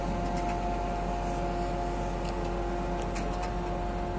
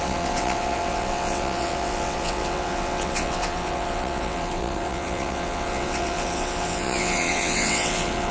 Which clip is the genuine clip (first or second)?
first